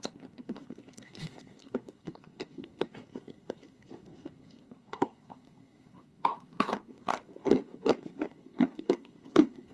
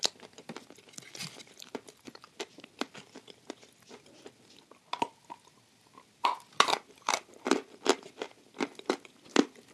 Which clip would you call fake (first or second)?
first